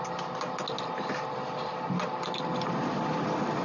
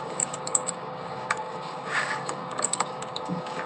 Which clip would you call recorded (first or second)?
first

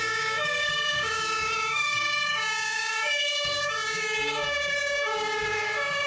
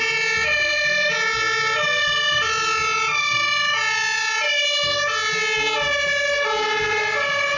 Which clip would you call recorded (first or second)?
second